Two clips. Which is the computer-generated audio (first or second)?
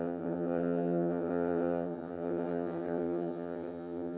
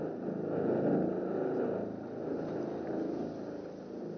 first